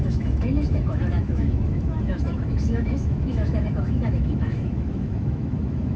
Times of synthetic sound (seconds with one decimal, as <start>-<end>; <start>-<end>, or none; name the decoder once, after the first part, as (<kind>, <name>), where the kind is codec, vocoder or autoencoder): 0.0-6.0 (autoencoder, DAC-VAE)